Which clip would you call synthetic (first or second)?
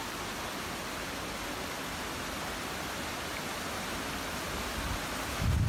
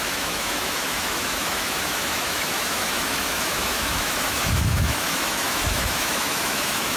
second